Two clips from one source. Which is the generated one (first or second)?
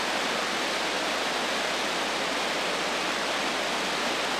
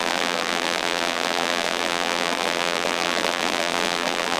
second